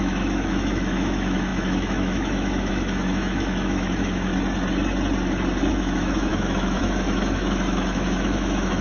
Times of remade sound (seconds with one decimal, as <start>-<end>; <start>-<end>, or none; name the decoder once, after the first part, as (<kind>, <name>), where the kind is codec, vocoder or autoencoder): 0.0-4.3 (autoencoder, DAC-VAE); 5.7-8.8